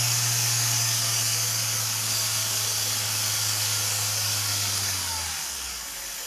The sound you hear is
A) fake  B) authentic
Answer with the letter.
A